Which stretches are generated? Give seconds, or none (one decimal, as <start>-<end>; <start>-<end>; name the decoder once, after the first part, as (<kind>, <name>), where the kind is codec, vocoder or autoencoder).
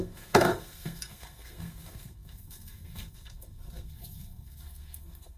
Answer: 0.0-5.4 (codec, SNAC)